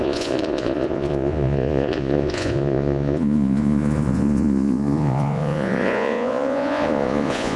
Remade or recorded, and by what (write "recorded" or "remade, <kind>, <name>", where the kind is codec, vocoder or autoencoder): remade, vocoder, Vocos